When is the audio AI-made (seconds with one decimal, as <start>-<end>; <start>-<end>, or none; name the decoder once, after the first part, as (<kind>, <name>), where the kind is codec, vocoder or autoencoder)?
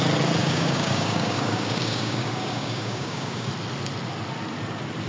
0.4-3.5 (codec, DAC)